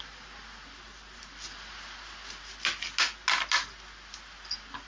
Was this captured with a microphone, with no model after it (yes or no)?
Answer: yes